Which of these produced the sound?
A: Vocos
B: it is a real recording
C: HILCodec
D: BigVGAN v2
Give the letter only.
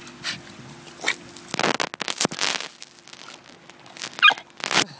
B